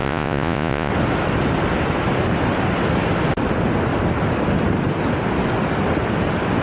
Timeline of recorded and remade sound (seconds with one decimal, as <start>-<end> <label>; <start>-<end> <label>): 0.0-0.9 remade; 0.9-6.6 recorded